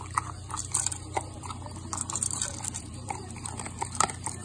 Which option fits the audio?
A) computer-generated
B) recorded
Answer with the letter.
A